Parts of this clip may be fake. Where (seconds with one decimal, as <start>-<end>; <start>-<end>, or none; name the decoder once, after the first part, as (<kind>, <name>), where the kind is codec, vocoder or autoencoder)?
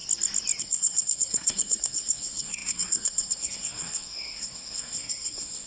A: 0.6-5.7 (codec, SNAC)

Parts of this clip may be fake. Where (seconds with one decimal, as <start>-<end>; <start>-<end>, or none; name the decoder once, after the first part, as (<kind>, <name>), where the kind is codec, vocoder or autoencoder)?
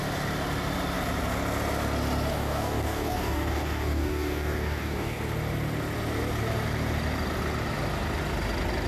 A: 2.3-5.2 (codec, DAC)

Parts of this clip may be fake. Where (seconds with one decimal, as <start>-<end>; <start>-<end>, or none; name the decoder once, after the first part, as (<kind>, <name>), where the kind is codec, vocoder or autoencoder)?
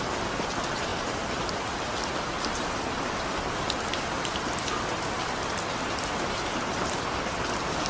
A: none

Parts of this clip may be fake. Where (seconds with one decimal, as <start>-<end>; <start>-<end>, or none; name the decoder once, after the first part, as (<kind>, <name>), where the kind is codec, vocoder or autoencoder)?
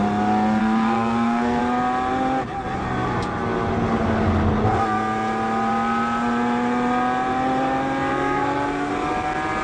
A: 0.6-1.6 (codec, SNAC); 8.1-8.9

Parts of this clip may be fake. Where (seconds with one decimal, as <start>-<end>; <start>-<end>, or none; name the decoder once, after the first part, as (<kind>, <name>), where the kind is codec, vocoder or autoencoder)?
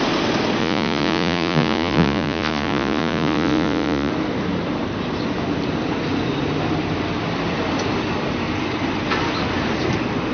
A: 0.6-4.1 (vocoder, Vocos)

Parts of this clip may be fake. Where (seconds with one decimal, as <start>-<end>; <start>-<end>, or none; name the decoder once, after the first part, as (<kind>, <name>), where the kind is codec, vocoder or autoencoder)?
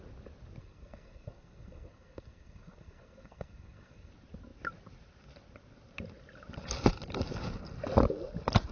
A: 0.6-4.1 (codec, SNAC)